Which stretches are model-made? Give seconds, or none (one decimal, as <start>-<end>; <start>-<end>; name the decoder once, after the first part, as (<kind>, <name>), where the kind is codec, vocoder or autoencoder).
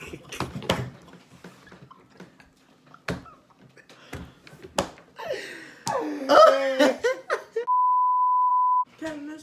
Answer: none